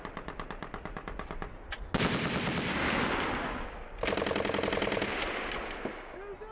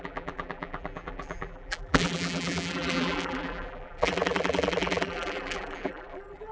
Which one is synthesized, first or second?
second